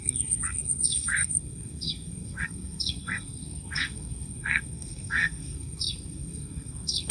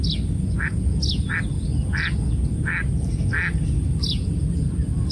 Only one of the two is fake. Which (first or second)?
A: first